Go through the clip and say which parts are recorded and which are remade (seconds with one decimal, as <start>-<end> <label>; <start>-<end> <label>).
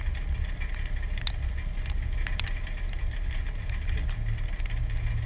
0.0-5.3 recorded